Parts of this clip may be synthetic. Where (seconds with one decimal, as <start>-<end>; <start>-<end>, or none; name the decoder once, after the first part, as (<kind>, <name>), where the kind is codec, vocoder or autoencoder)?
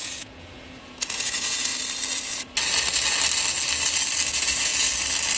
0.0-1.7 (vocoder, Vocos); 4.3-4.7